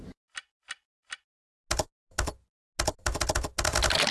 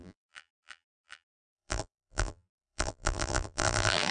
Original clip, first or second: first